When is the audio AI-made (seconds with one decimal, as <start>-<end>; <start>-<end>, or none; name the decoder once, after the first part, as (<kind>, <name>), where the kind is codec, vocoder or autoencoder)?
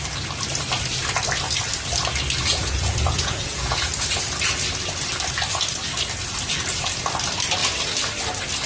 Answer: 2.5-3.9 (vocoder, Vocos)